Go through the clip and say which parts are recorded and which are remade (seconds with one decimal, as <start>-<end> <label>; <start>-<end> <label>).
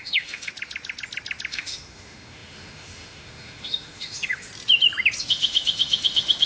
0.0-0.5 remade; 0.5-1.5 recorded; 1.5-4.5 remade; 4.5-5.2 recorded; 5.2-6.5 remade